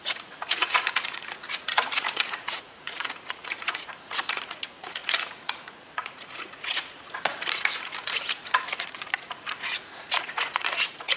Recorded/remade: remade